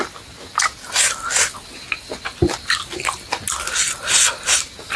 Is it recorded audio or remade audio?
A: recorded